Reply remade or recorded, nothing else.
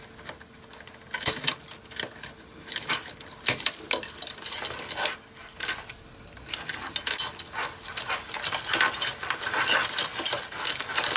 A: recorded